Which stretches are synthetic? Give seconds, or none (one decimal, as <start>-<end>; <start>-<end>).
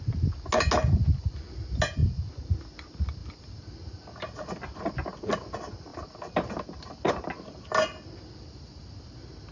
none